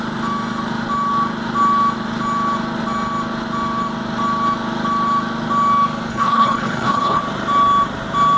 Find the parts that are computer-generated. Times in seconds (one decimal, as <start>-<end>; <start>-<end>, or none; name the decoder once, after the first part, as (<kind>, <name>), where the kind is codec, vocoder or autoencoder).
6.1-7.2 (codec, HILCodec)